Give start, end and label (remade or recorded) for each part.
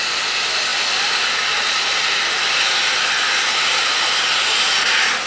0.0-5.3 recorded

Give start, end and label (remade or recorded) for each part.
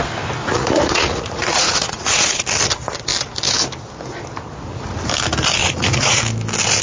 0.0-0.4 recorded; 0.4-2.4 remade; 2.4-5.6 recorded; 5.6-6.2 remade; 6.2-6.8 recorded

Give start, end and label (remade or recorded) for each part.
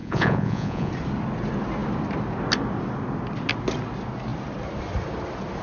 0.0-0.9 remade; 0.9-5.6 recorded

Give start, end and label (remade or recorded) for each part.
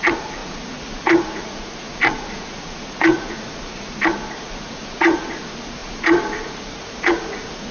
0.0-7.7 remade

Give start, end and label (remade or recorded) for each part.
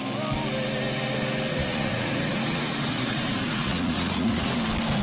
0.0-1.5 recorded; 1.5-4.5 remade; 4.5-5.0 recorded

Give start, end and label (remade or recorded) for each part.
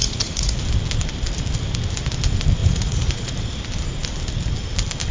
0.0-0.6 remade; 0.6-2.6 recorded; 2.6-3.3 remade; 3.3-5.1 recorded